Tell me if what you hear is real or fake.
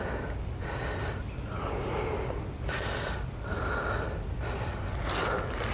real